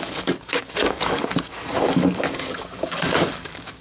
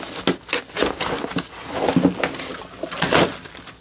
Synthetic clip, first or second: first